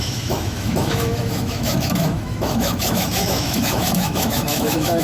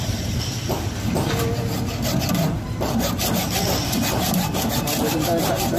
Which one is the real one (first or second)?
second